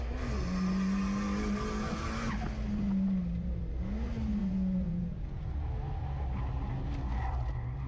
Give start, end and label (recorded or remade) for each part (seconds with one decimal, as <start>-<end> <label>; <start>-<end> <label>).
0.0-4.4 recorded; 4.4-5.4 remade; 5.4-7.9 recorded